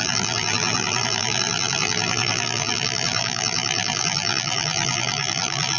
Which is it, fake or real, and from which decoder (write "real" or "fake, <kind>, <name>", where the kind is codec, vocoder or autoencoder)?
fake, vocoder, BigVGAN v2